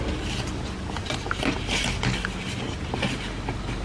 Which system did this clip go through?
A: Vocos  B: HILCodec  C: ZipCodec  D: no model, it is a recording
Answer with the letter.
D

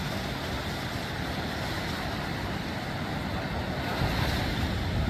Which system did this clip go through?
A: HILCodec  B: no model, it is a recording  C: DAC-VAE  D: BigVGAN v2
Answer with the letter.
D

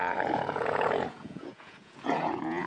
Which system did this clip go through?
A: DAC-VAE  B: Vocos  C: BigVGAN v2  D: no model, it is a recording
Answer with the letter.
B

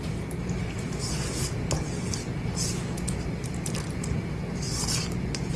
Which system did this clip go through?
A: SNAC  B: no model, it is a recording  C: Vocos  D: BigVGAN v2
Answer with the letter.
B